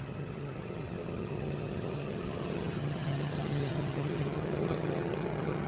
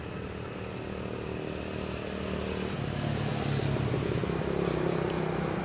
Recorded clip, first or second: second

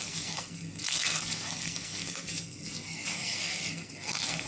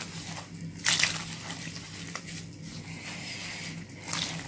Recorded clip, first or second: second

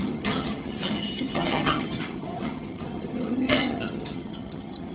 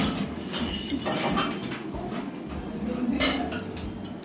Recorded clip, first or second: second